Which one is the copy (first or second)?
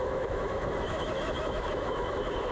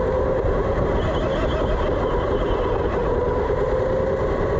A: first